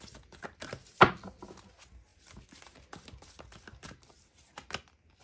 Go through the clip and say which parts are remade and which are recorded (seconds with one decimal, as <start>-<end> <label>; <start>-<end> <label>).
0.0-5.2 recorded